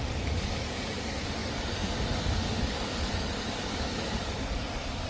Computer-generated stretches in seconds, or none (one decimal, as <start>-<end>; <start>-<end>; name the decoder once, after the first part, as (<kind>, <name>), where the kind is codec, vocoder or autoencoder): 0.0-5.1 (codec, DAC)